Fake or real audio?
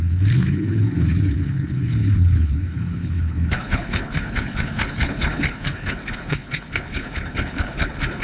fake